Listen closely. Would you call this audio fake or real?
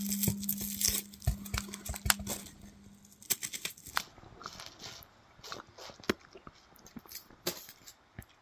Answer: real